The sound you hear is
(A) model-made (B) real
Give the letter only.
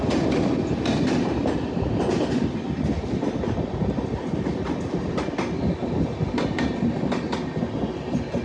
B